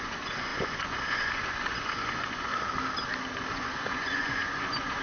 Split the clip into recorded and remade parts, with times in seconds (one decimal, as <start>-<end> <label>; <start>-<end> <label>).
0.0-2.5 remade; 2.5-3.5 recorded; 3.5-5.0 remade